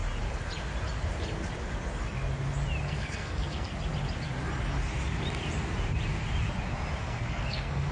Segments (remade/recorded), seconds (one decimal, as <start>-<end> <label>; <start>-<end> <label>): 0.0-2.8 recorded; 2.8-3.7 remade; 3.7-7.0 recorded; 7.0-7.9 remade